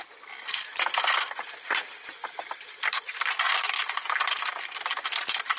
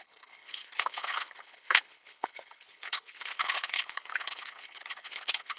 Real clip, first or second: first